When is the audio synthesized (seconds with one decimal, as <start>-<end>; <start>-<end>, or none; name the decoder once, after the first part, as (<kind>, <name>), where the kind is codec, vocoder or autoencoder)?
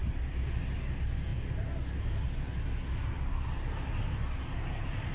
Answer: none